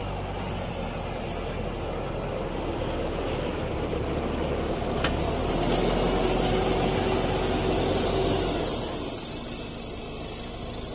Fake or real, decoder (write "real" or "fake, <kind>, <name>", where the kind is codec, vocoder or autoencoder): real